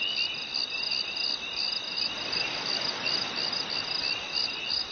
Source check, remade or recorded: recorded